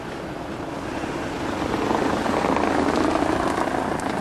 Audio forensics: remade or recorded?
recorded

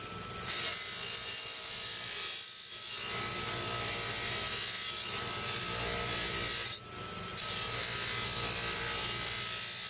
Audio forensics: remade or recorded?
recorded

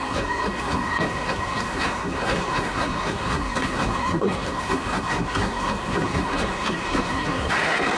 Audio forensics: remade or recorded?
remade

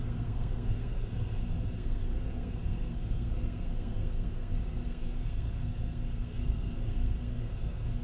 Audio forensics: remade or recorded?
remade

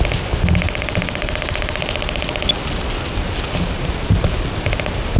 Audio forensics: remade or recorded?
recorded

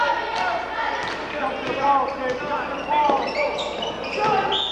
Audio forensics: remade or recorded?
recorded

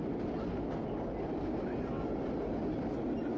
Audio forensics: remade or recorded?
recorded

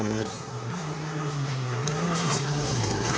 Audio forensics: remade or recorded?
remade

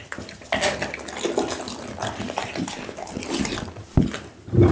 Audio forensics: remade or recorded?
recorded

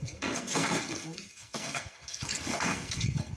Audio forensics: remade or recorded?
remade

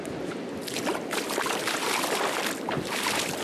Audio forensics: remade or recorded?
recorded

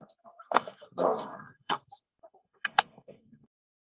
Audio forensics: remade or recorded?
remade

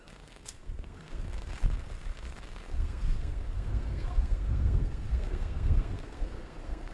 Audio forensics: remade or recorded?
remade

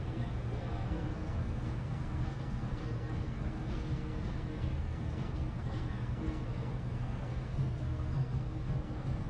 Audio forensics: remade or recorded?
remade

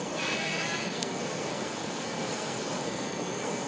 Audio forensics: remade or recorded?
remade